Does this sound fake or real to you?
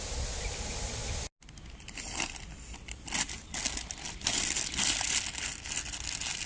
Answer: real